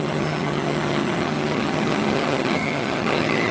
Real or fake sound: fake